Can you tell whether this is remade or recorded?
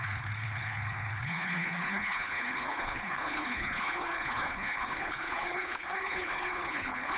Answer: remade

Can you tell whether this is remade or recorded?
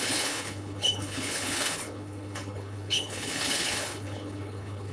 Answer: remade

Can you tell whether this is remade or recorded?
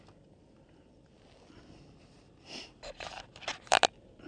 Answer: recorded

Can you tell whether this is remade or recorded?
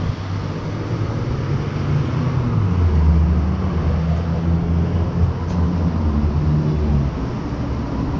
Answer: recorded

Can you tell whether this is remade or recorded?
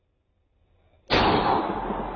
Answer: recorded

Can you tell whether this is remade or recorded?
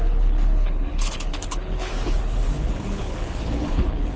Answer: remade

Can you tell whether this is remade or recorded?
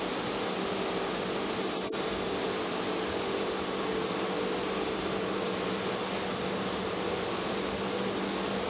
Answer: recorded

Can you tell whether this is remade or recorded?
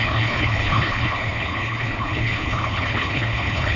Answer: remade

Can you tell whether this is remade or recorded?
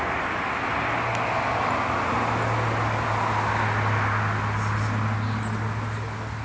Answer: recorded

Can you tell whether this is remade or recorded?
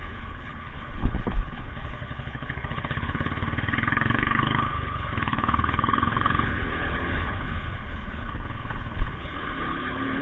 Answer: remade